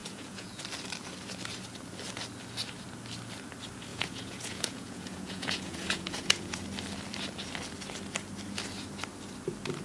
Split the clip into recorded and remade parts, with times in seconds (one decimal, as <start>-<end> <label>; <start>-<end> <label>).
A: 0.0-0.6 remade; 0.6-3.9 recorded; 3.9-6.6 remade; 6.6-9.8 recorded